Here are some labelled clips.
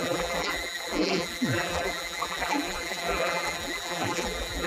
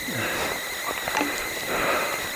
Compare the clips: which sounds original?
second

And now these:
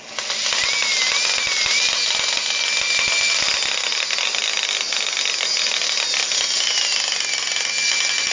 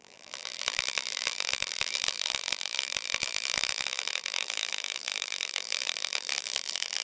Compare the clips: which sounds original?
first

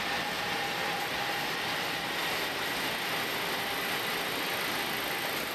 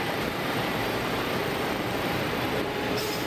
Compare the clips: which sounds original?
first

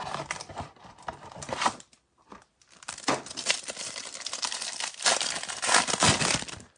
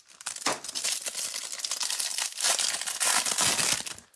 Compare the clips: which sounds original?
second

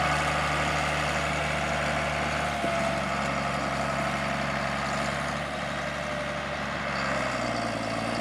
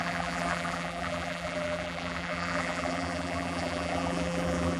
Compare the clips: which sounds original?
first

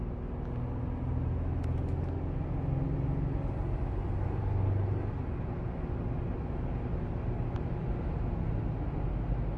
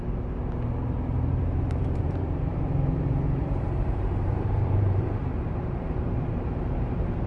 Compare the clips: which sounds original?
first